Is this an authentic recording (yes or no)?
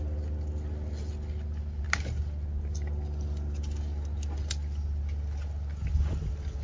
yes